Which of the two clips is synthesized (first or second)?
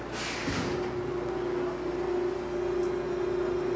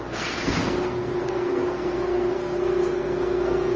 second